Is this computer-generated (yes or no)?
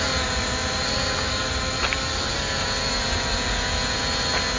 no